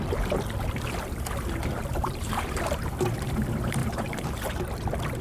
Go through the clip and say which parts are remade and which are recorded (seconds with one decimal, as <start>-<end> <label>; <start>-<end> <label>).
0.0-2.0 recorded; 2.0-2.9 remade; 2.9-3.8 recorded; 3.8-4.3 remade; 4.3-5.2 recorded